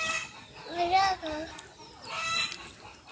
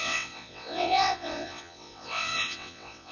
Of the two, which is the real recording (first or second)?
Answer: first